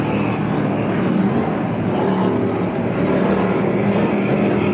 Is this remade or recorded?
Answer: recorded